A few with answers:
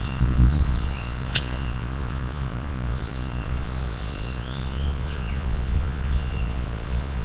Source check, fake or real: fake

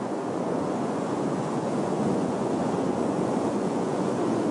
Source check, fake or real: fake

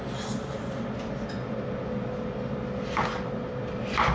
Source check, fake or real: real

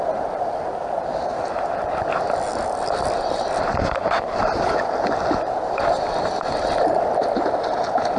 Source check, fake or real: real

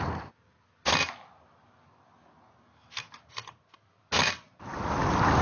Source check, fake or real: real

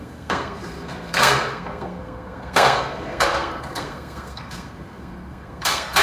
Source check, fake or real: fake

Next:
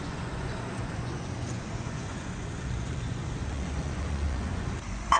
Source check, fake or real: fake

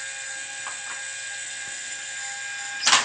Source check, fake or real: real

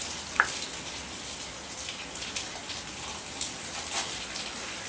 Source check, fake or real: real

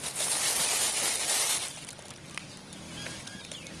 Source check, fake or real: real